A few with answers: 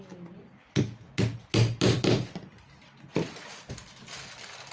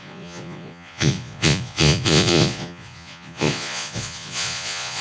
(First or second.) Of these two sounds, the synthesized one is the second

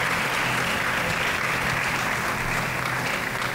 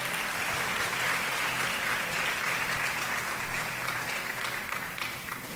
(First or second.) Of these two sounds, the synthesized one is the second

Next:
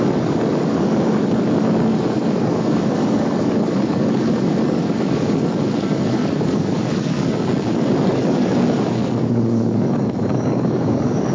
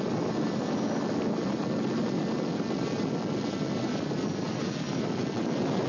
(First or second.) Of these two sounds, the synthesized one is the first